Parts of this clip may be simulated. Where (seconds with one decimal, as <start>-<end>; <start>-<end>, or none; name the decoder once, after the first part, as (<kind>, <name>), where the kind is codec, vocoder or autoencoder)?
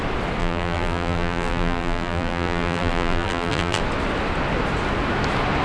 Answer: 0.4-3.8 (vocoder, BigVGAN v2)